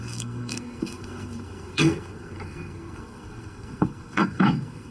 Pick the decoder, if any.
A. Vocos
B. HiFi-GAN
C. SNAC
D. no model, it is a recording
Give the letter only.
C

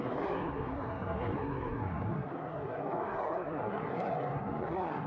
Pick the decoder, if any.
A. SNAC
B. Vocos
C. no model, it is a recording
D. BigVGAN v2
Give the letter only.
A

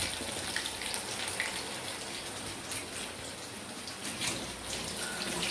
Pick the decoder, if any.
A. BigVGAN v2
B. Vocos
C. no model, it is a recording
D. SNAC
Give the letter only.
C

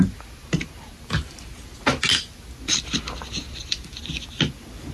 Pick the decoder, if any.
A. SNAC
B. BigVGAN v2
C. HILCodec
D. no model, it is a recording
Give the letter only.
D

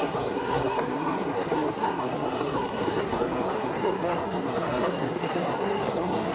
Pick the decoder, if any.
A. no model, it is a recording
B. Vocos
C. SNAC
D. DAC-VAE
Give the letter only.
C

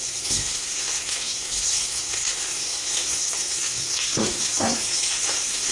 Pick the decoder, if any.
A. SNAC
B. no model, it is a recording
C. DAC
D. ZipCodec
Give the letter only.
A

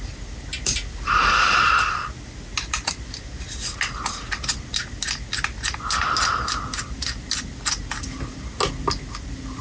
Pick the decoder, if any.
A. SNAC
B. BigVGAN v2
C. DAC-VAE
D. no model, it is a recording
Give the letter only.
D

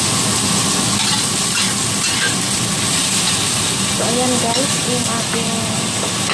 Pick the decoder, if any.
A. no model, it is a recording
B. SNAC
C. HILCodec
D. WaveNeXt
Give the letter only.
A